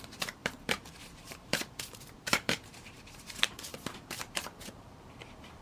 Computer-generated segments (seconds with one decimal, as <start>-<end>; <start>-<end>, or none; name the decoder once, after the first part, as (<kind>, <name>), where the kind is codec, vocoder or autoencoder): 0.0-5.6 (vocoder, BigVGAN v2)